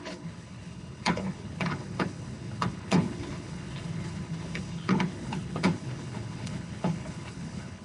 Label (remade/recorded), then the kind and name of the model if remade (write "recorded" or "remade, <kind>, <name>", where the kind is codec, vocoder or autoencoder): remade, codec, HILCodec